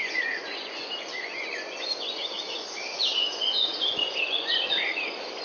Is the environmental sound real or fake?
fake